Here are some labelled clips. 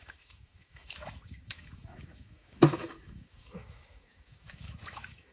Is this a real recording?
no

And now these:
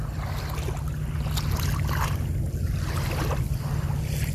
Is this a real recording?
yes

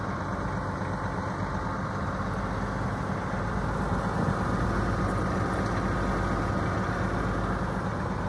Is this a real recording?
yes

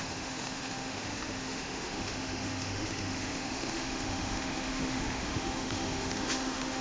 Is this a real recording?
no